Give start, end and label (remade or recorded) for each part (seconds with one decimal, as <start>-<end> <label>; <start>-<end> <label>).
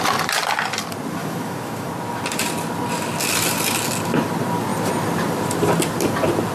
0.0-1.2 recorded; 1.2-1.9 remade; 1.9-6.5 recorded